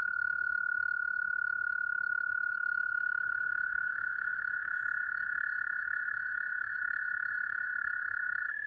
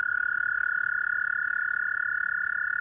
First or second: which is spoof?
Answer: first